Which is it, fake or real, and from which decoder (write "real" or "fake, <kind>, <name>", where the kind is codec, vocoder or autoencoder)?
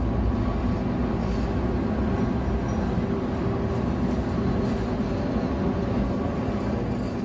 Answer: real